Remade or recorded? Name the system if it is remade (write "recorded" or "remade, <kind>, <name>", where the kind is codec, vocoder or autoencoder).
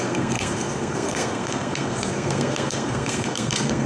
remade, codec, SNAC